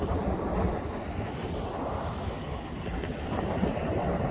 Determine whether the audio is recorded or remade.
recorded